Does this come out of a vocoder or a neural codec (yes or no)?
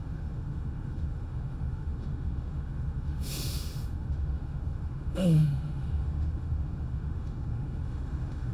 yes